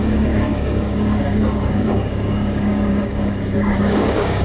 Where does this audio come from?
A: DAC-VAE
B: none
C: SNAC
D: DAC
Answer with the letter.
D